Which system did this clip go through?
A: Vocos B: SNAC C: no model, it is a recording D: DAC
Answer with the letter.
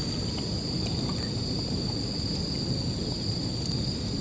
C